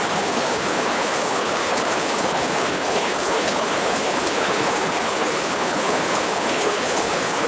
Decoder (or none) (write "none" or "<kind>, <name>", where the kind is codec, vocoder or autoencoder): codec, HILCodec